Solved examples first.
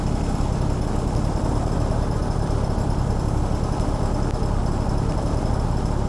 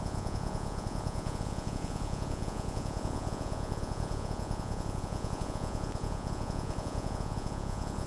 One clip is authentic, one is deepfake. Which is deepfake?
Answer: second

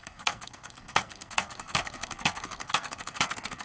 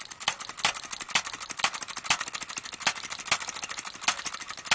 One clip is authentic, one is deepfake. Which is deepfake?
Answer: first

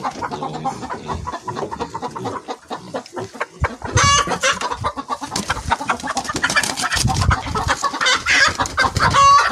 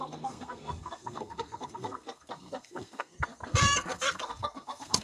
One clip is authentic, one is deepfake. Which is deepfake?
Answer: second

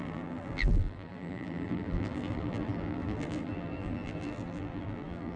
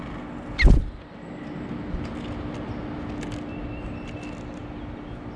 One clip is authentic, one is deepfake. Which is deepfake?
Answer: first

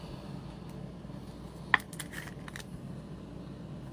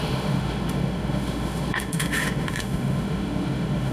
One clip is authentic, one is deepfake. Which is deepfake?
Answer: second